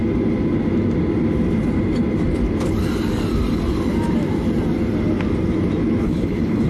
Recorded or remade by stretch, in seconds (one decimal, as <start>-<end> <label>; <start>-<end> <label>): 0.0-6.0 recorded; 6.0-6.7 remade